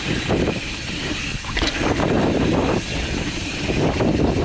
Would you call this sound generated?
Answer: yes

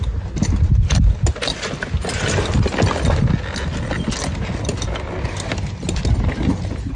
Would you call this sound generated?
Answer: no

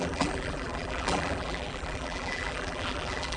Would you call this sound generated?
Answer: yes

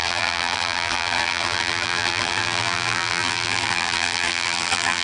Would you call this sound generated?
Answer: yes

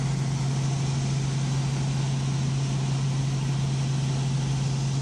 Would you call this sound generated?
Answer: no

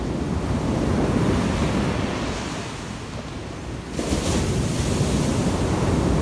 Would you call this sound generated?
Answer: no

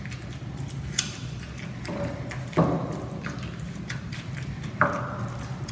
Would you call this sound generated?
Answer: no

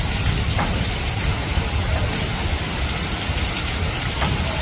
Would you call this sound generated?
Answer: no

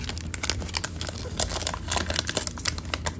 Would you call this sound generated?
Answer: no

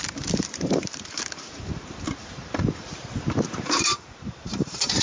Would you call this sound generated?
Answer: yes